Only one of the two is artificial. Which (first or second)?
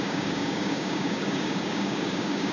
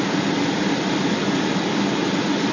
first